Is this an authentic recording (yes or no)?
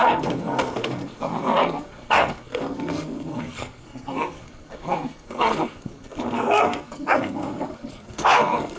no